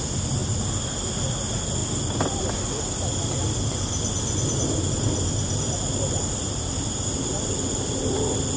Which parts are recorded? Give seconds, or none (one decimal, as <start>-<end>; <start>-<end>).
0.0-8.6